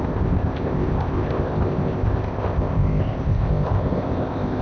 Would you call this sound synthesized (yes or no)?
yes